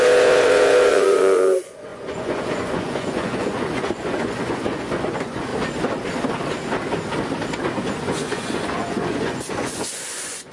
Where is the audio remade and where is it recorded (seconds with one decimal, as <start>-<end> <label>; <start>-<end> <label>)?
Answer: 0.0-5.5 remade; 5.5-7.9 recorded; 7.9-10.5 remade